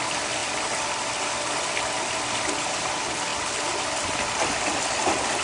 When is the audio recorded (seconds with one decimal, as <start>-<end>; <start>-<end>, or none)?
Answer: 0.0-5.4